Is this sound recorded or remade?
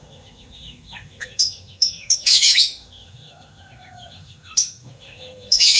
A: remade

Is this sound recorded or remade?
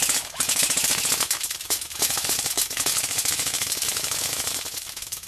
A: remade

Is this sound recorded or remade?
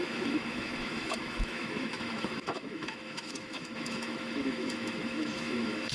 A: remade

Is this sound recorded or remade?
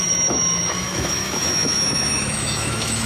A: remade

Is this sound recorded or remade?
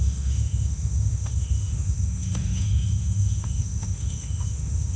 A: remade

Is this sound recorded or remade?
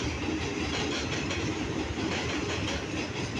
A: recorded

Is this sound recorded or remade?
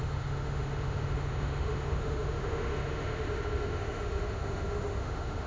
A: remade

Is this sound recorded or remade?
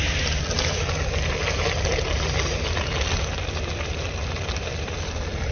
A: recorded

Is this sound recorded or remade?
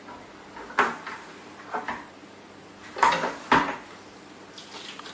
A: recorded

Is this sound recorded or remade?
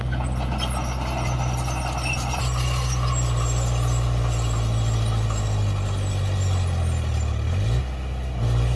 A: recorded